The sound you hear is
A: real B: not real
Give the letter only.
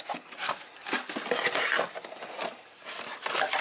A